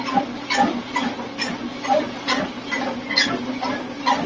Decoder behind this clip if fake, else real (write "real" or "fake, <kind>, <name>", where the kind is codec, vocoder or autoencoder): real